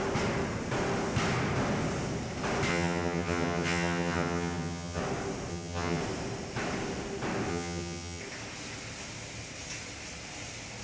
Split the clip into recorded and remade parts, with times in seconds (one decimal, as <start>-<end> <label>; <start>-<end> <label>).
0.0-2.7 recorded; 2.7-5.0 remade; 5.0-5.5 recorded; 5.5-6.0 remade; 6.0-7.5 recorded; 7.5-8.2 remade; 8.2-10.8 recorded